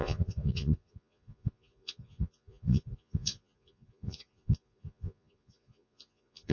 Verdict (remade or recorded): remade